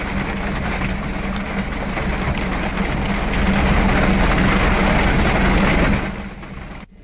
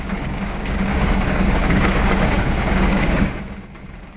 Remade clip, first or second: second